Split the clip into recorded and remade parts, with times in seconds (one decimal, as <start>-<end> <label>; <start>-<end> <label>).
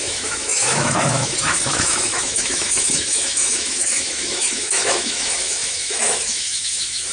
0.0-7.1 remade